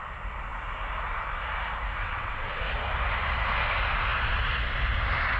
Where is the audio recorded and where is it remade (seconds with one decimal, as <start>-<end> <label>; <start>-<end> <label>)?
0.0-2.0 recorded; 2.0-2.6 remade; 2.6-5.4 recorded